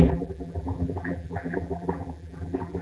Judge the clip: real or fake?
fake